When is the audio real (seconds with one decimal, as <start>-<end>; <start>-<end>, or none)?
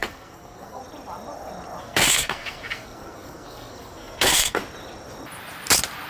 0.8-1.8; 4.6-6.1